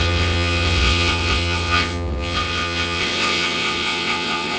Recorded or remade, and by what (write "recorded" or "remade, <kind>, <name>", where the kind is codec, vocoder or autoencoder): remade, vocoder, WaveNeXt